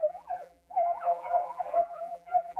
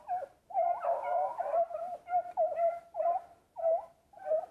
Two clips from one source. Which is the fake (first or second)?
first